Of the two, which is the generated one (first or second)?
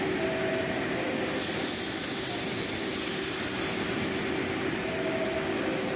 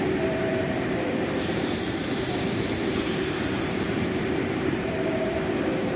second